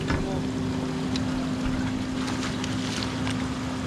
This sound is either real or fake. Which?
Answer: real